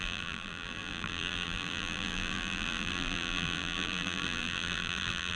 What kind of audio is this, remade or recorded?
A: remade